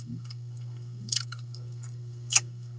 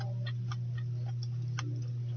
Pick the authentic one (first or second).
second